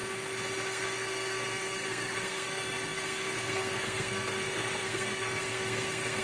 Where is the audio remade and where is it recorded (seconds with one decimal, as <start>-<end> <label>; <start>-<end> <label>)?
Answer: 0.0-0.7 recorded; 0.7-6.2 remade